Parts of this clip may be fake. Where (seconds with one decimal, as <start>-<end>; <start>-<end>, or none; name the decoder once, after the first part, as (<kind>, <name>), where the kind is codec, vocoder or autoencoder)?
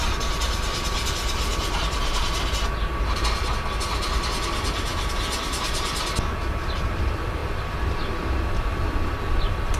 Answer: none